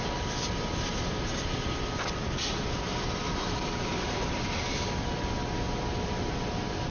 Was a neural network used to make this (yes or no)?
no